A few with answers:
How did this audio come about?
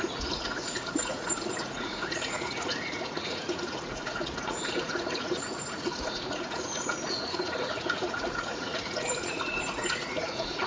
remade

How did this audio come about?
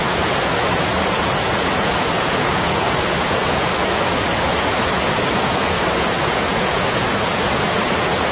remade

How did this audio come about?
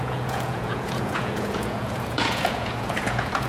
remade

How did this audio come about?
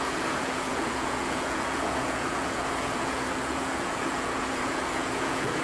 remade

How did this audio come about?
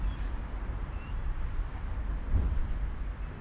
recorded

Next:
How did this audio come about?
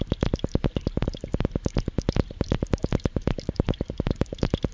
recorded